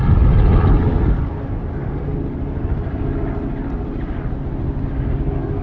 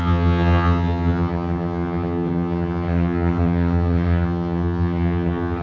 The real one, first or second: first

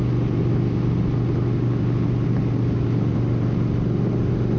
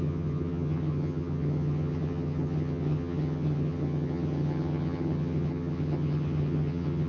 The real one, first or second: first